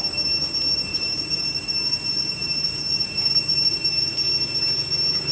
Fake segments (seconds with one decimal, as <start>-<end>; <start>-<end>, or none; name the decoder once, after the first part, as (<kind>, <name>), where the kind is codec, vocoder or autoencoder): 0.9-4.1 (vocoder, BigVGAN v2)